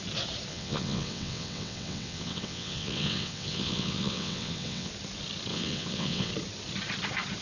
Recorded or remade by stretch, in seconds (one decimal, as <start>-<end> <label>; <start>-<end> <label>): 0.0-0.5 recorded; 0.5-4.9 remade; 4.9-5.5 recorded; 5.5-6.3 remade; 6.3-7.4 recorded